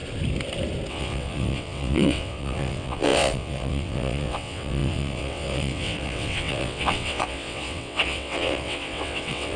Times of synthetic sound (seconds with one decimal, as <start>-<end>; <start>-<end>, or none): 0.9-9.6